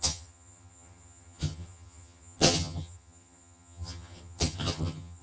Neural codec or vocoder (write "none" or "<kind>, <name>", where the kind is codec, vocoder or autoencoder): vocoder, HiFi-GAN